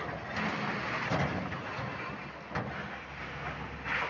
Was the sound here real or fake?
real